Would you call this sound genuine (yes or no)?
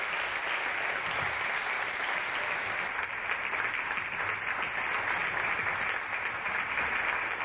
yes